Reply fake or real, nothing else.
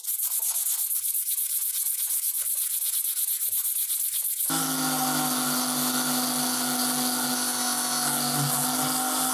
real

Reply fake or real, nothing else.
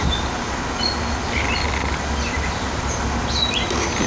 real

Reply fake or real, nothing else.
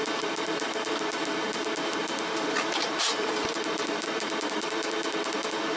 fake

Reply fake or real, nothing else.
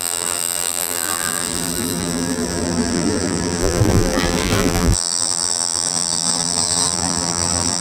fake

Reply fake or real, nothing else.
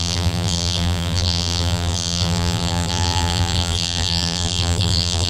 fake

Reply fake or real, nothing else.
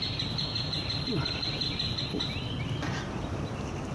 real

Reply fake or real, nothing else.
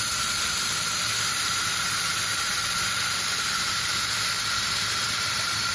real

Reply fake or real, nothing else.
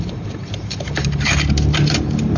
fake